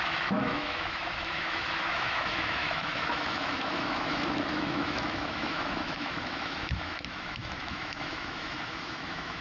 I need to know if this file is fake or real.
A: fake